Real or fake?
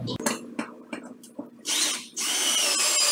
real